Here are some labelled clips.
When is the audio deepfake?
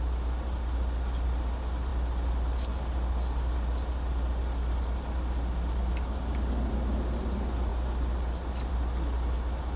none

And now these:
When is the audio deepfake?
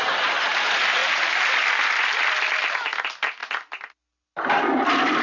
none